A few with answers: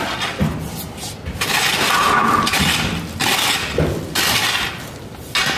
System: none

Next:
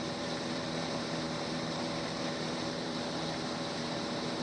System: vocoder, BigVGAN v2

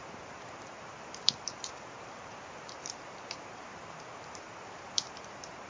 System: vocoder, BigVGAN v2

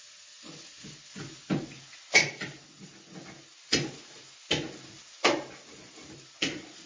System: none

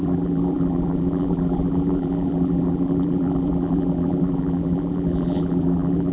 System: vocoder, BigVGAN v2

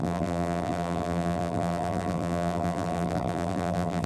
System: vocoder, BigVGAN v2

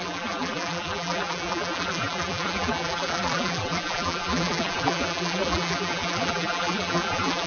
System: vocoder, BigVGAN v2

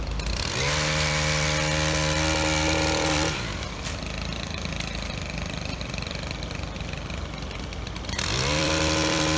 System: vocoder, BigVGAN v2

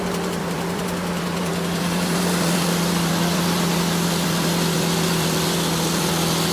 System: vocoder, BigVGAN v2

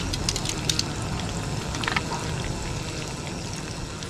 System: none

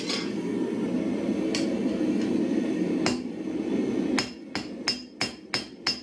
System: none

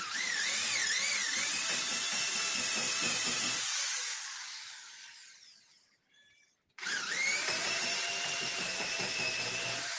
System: vocoder, BigVGAN v2